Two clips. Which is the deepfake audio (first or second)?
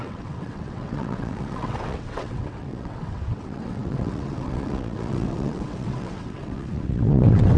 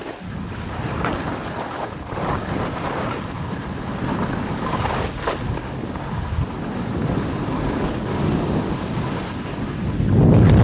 first